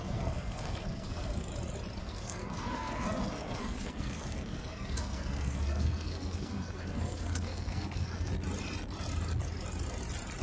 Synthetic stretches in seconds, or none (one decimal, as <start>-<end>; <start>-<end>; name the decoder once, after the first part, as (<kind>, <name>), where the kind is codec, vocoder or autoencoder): 0.0-1.5 (codec, SNAC); 2.0-8.3

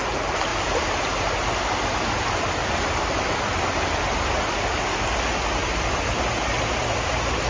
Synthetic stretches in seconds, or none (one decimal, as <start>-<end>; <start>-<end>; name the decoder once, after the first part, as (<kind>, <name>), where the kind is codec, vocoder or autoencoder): 0.5-1.0 (vocoder, BigVGAN v2); 2.6-3.4; 5.6-7.5

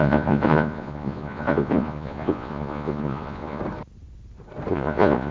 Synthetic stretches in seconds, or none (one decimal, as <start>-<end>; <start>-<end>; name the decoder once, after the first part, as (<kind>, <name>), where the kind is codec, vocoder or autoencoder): 0.0-3.6 (vocoder, Vocos); 4.7-5.3

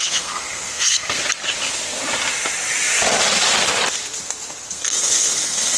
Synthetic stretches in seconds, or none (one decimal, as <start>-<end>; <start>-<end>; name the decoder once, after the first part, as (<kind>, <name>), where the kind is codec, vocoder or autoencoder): 0.0-1.2 (codec, SNAC); 4.7-5.8

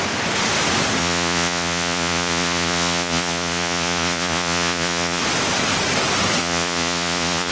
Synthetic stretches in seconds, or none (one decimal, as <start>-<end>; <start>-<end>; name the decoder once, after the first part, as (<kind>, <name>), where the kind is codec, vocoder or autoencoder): 1.0-5.2 (vocoder, Vocos); 6.4-7.5

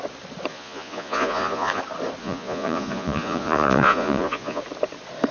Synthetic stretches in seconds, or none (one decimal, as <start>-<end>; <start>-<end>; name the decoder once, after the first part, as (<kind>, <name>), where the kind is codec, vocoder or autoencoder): 0.5-1.8 (vocoder, Vocos); 2.2-4.6

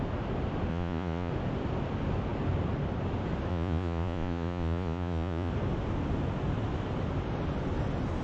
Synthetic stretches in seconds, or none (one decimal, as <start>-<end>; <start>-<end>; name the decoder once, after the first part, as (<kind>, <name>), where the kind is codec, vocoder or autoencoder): 0.7-1.3 (vocoder, Vocos); 3.5-5.5